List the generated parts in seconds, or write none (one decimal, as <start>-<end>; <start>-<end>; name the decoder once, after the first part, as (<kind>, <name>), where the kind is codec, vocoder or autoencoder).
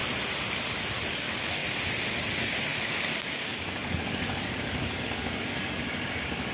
1.1-1.6 (codec, DAC); 2.8-6.5